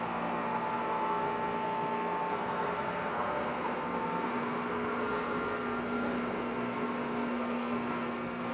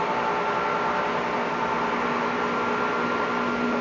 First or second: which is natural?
second